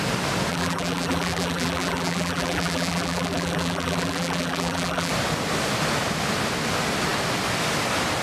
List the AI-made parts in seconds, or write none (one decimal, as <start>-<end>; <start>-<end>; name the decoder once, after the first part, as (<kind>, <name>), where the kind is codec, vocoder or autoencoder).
0.5-5.1 (vocoder, BigVGAN v2)